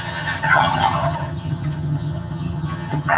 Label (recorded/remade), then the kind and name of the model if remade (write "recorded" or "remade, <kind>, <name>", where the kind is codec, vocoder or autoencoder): remade, vocoder, HiFi-GAN